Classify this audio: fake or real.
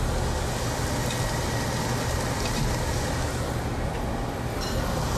real